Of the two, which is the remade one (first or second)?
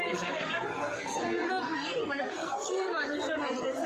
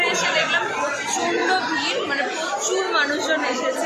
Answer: first